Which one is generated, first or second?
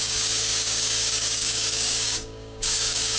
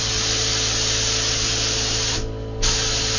first